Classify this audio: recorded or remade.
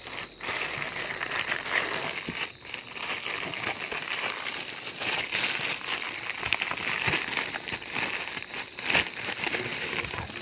recorded